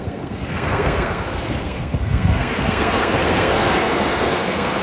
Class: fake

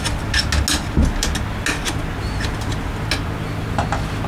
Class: real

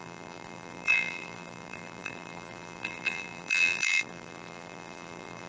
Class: fake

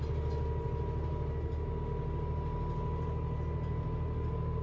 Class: real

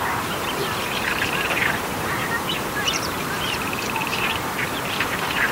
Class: fake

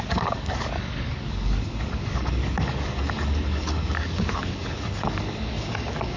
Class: fake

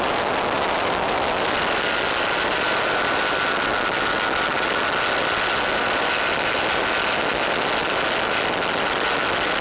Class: real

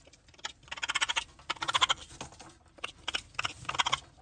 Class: real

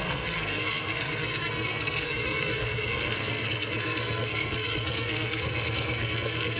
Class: fake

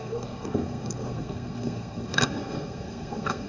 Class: fake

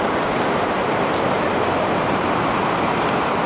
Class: fake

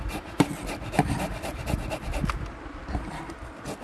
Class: real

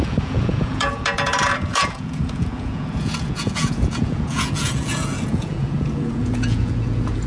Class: fake